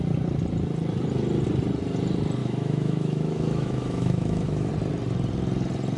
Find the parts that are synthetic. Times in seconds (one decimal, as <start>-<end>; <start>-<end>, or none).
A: 2.4-4.7